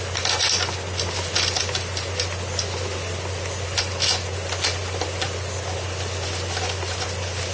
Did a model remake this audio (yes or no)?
no